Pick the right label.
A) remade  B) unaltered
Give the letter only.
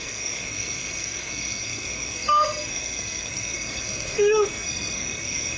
A